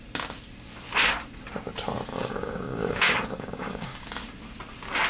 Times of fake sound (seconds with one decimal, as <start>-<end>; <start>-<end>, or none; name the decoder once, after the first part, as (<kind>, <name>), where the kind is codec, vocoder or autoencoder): 2.1-4.1 (codec, DAC)

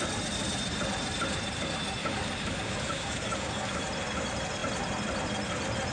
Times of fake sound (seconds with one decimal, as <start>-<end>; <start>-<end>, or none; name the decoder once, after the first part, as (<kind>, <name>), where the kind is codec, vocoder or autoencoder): 2.0-3.8 (codec, DAC)

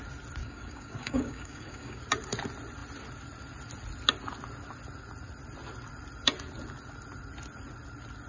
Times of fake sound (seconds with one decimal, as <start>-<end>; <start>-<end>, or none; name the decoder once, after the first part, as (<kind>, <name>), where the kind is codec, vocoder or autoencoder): 0.4-2.0 (codec, DAC)

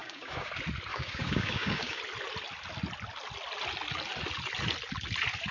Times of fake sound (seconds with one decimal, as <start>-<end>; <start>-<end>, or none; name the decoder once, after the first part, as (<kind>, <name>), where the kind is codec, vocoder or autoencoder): 0.0-0.5 (codec, DAC); 0.9-2.0

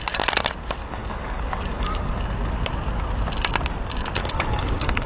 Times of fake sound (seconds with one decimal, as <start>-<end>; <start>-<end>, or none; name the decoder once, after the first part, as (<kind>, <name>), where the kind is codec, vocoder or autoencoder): 0.8-2.2 (codec, DAC); 4.2-5.1

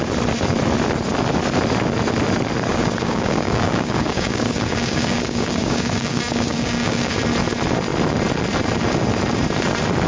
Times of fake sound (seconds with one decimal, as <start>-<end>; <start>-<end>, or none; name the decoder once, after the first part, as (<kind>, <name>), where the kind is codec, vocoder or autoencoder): 2.7-7.2 (codec, DAC)

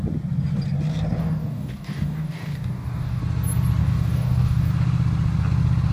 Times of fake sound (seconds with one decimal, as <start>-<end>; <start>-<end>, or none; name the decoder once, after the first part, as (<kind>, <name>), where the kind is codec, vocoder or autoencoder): 1.2-3.2 (codec, DAC); 3.8-4.7

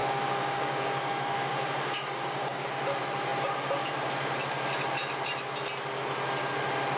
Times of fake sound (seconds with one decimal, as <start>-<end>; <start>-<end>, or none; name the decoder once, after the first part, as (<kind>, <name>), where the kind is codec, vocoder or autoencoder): 0.0-2.7 (codec, DAC)